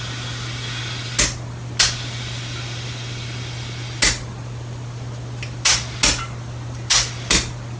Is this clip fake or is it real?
real